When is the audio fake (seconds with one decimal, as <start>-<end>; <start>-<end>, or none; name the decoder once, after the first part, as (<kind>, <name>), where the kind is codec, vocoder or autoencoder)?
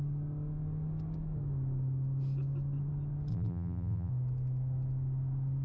3.3-4.1 (vocoder, BigVGAN v2)